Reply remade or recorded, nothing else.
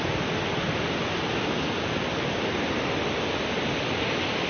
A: recorded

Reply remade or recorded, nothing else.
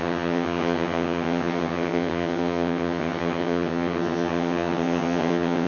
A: remade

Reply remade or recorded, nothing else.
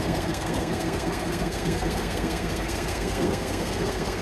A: remade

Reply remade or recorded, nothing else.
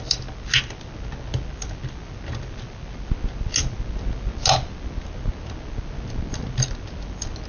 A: recorded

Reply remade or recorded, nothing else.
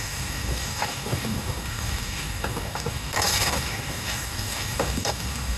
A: remade